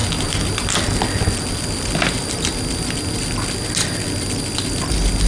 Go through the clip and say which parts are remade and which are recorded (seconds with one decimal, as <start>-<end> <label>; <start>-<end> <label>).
0.0-5.3 recorded